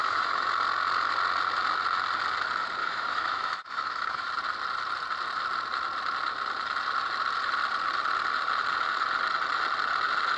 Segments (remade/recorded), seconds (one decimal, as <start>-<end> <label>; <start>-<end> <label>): 0.0-0.5 remade; 0.5-2.8 recorded; 2.8-4.3 remade; 4.3-10.4 recorded